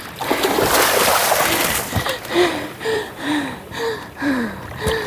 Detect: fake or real fake